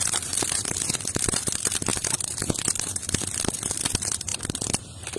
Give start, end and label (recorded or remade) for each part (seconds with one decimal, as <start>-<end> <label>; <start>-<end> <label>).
0.0-1.9 remade; 1.9-2.4 recorded; 2.4-5.2 remade